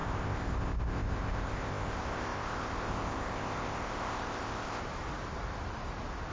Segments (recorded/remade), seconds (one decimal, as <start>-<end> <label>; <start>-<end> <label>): 0.0-4.8 remade; 4.8-6.3 recorded